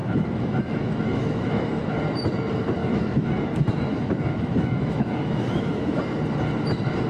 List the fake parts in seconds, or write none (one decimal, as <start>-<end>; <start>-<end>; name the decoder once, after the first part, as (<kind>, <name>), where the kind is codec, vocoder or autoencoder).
0.0-2.0 (autoencoder, DAC-VAE); 2.8-6.0